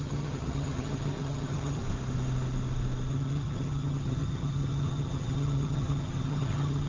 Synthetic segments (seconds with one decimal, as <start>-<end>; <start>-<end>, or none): 0.0-1.8; 3.1-6.9